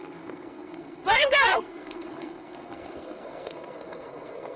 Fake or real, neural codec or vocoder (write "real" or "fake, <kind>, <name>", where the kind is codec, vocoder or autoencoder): fake, codec, SNAC